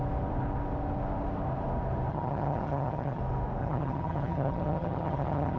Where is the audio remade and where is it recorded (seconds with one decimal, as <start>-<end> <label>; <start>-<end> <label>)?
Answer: 0.0-2.1 recorded; 2.1-3.2 remade; 3.2-3.6 recorded; 3.6-5.6 remade